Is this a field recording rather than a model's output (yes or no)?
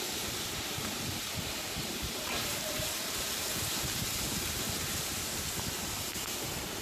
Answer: no